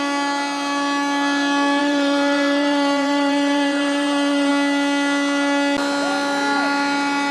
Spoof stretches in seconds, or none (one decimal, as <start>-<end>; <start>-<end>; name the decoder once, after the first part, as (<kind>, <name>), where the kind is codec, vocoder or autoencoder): 1.8-4.5 (vocoder, BigVGAN v2)